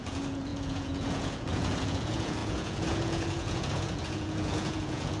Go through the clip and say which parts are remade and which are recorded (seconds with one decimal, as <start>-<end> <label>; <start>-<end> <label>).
0.0-5.2 remade